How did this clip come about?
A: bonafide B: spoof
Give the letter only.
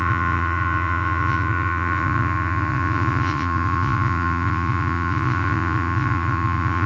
B